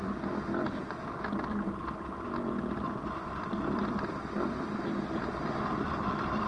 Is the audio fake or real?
real